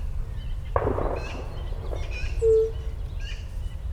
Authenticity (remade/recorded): recorded